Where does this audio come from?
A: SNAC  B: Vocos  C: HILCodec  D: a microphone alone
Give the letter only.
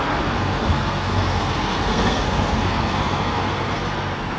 A